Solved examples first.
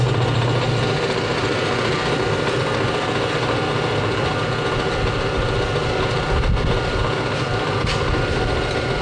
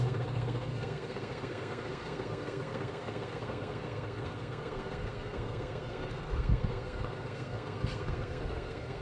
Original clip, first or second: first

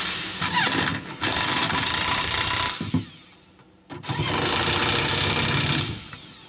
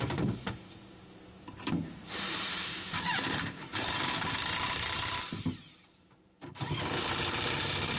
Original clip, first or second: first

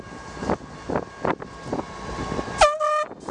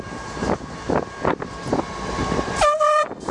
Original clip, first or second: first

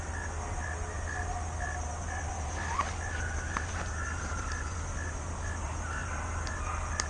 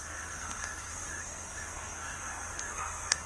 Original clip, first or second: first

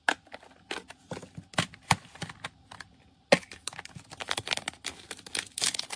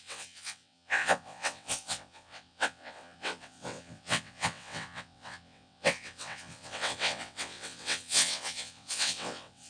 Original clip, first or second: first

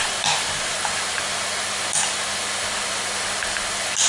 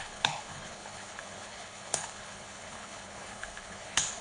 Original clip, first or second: first